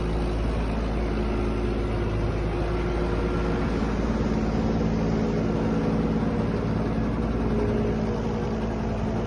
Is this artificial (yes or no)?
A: no